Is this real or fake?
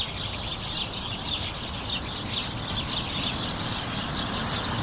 real